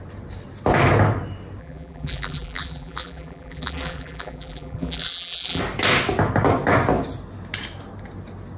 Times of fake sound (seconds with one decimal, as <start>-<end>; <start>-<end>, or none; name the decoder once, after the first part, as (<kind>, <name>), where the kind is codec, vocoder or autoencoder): 1.6-5.6 (vocoder, BigVGAN v2)